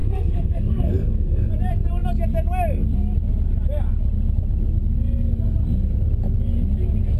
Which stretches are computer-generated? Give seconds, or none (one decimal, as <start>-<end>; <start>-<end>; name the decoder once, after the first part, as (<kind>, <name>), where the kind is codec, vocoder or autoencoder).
0.0-1.5 (codec, SNAC)